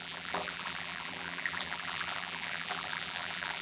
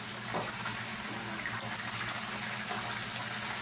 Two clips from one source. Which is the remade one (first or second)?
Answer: first